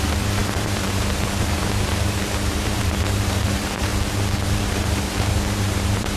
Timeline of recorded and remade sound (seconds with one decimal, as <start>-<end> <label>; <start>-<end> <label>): 0.0-3.9 remade; 3.9-4.6 recorded; 4.6-6.2 remade